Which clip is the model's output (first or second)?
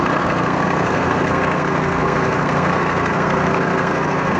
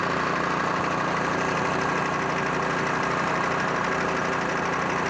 first